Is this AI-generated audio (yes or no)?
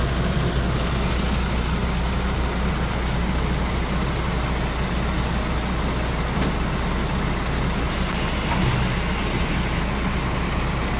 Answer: no